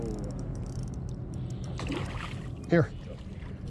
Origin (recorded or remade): recorded